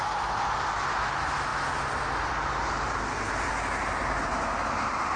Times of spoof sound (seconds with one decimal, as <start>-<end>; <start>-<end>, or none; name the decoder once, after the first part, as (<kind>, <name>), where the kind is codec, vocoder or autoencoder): none